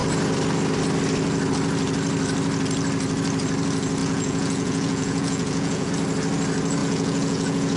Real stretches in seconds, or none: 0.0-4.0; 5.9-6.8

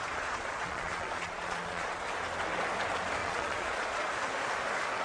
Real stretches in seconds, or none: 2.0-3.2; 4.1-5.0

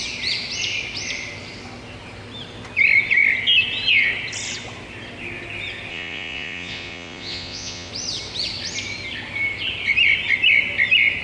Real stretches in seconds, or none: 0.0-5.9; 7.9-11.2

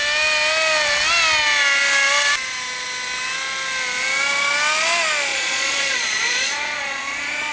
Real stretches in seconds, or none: 0.0-5.3